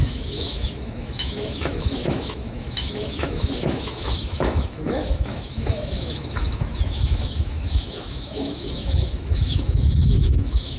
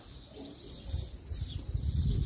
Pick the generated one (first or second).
first